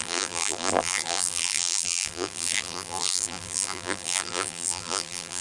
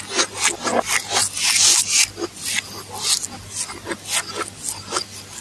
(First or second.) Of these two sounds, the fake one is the first